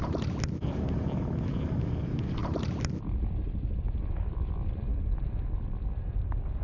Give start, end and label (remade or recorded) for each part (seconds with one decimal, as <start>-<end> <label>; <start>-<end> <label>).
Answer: 0.0-6.6 recorded